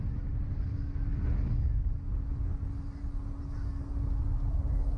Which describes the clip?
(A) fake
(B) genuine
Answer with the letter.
B